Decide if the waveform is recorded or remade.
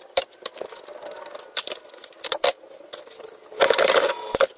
recorded